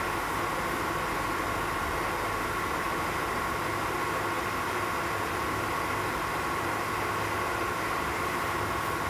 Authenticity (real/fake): real